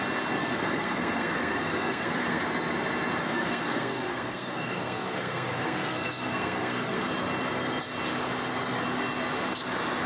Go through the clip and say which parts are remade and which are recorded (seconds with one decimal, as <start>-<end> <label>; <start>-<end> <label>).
0.0-0.4 recorded; 0.4-2.4 remade; 2.4-3.2 recorded; 3.2-7.1 remade; 7.1-10.1 recorded